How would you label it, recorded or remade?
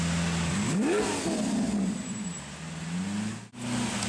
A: recorded